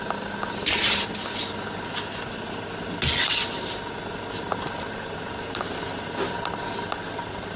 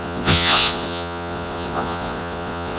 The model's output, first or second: second